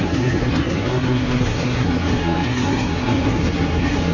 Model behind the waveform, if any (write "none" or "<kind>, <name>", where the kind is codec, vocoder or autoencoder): codec, SNAC